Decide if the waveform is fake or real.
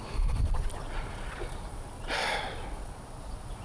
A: fake